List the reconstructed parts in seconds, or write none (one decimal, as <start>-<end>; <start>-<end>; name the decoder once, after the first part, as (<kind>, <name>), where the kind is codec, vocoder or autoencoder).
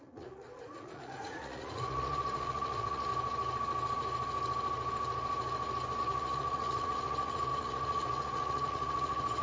0.0-3.1 (vocoder, Vocos); 6.0-9.4